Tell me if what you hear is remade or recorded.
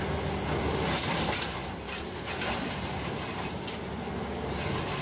recorded